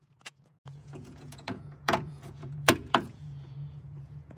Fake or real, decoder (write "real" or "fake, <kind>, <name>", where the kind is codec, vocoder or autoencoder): fake, vocoder, Vocos